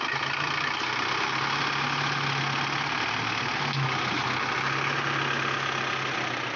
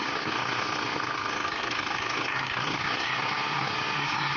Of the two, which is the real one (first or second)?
first